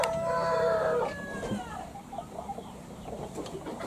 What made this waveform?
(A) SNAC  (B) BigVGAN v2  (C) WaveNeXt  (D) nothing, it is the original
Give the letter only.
B